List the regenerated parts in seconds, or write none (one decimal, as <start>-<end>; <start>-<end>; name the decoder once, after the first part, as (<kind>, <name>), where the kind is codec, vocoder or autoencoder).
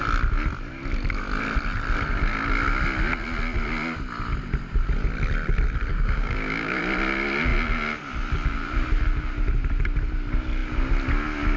5.9-6.8 (codec, DAC)